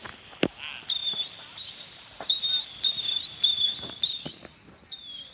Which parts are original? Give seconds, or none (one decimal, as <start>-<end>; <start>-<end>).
0.0-5.3